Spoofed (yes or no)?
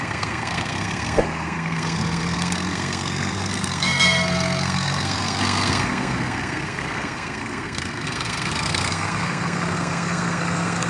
yes